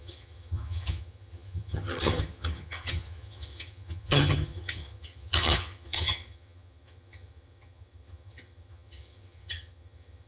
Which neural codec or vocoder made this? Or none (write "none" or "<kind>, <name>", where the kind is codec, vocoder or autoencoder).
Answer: vocoder, HiFi-GAN